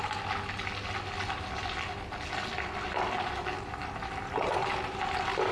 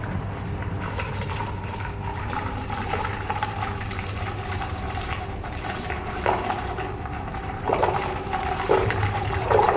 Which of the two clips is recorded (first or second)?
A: first